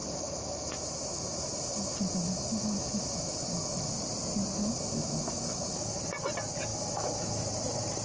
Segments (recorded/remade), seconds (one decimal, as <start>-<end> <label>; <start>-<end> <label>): 0.0-3.9 remade; 3.9-4.6 recorded; 4.6-6.0 remade; 6.0-6.7 recorded; 6.7-7.4 remade; 7.4-8.0 recorded